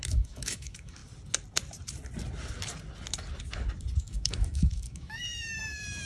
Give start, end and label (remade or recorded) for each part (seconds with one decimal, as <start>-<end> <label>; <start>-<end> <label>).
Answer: 0.0-1.0 remade; 1.0-4.0 recorded; 4.0-6.1 remade